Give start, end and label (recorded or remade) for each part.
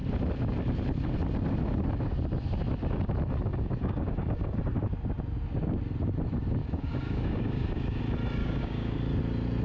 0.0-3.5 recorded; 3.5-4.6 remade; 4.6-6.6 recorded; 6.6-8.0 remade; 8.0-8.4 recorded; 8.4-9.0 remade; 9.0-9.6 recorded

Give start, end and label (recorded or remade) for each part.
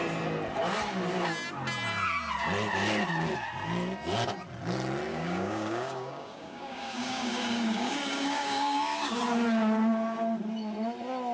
0.0-5.1 recorded; 5.1-9.2 remade; 9.2-11.3 recorded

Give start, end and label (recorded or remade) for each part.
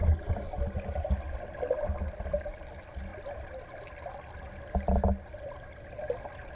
0.0-6.5 recorded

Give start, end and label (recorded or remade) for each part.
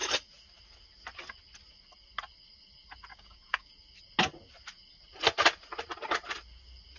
0.0-3.1 recorded; 3.1-3.7 remade; 3.7-7.0 recorded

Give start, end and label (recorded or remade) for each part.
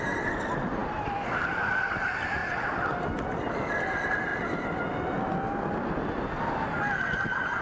0.0-7.6 recorded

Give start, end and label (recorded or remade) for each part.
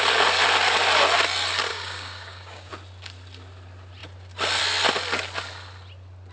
0.0-1.7 recorded; 1.7-2.7 remade; 2.7-6.3 recorded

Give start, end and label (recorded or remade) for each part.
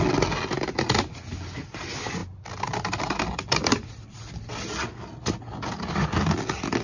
0.0-6.8 recorded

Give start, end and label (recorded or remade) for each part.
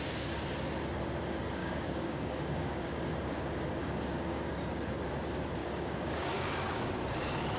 0.0-1.6 recorded; 1.6-2.9 remade; 2.9-3.8 recorded; 3.8-4.5 remade; 4.5-5.6 recorded; 5.6-6.9 remade; 6.9-7.6 recorded